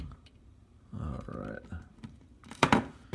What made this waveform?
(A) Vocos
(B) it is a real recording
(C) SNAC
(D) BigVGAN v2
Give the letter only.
D